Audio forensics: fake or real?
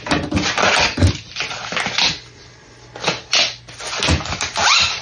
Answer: real